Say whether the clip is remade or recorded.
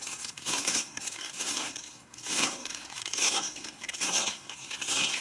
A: remade